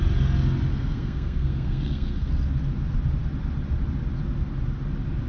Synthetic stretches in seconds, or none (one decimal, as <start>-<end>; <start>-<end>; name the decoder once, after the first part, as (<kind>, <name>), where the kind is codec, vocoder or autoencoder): 0.7-2.3 (codec, SNAC)